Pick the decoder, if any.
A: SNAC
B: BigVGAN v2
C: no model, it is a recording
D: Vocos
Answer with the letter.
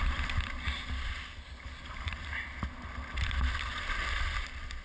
C